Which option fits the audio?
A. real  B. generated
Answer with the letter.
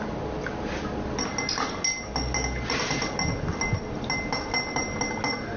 A